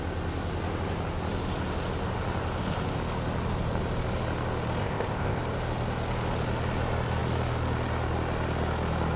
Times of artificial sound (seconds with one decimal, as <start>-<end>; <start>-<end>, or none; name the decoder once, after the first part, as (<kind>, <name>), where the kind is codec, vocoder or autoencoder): 4.8-5.4 (codec, ZipCodec)